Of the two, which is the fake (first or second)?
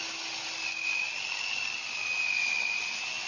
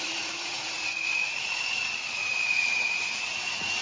second